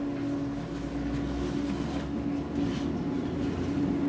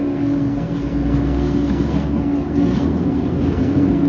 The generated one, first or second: second